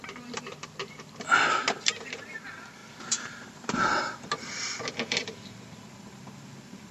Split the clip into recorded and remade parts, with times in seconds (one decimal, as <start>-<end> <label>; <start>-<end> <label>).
0.0-6.9 remade